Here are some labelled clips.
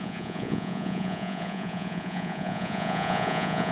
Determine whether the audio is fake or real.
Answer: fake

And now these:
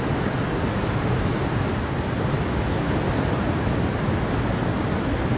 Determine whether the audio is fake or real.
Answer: real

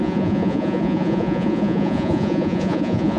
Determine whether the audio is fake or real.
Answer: fake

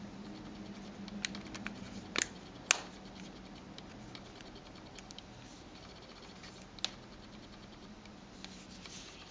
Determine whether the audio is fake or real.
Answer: real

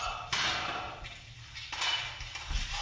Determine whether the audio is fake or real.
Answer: real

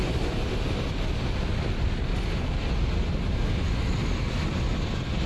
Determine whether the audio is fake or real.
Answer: real